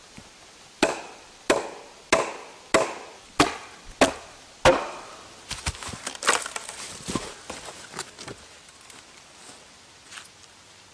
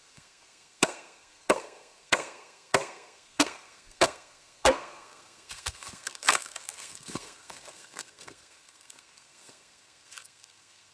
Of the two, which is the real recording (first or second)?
first